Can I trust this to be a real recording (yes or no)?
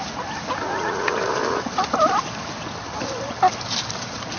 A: yes